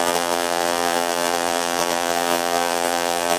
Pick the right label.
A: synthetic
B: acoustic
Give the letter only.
A